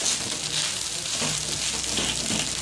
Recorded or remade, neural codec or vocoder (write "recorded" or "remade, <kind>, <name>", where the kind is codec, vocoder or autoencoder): recorded